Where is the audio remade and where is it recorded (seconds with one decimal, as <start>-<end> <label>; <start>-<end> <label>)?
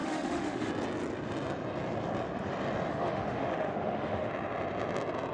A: 0.0-0.7 remade; 0.7-2.9 recorded; 2.9-4.3 remade; 4.3-5.3 recorded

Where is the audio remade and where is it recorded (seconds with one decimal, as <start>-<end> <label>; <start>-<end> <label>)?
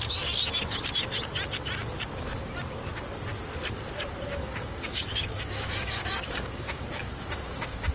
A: 0.0-4.3 recorded; 4.3-7.9 remade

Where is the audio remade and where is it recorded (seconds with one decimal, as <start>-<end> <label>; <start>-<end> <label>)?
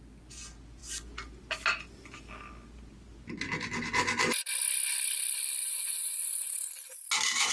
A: 0.0-5.6 recorded; 5.6-6.7 remade; 6.7-7.5 recorded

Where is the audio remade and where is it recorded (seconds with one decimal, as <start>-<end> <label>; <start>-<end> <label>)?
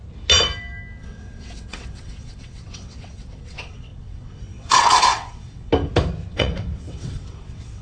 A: 0.0-1.0 recorded; 1.0-5.7 remade; 5.7-6.3 recorded; 6.3-7.8 remade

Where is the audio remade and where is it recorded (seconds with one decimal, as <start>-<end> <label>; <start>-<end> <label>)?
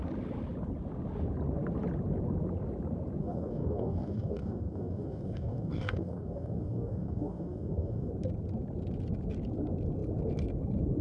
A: 0.0-3.2 recorded; 3.2-8.1 remade; 8.1-11.0 recorded